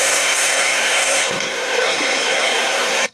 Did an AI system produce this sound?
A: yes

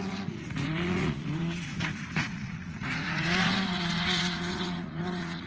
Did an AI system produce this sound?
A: yes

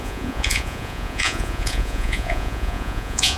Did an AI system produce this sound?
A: yes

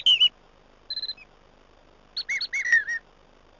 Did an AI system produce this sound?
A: no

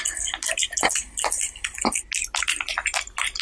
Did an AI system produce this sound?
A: no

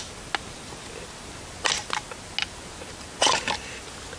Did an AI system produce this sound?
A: no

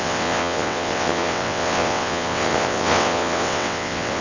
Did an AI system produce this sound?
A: yes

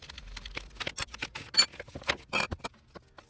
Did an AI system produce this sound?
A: no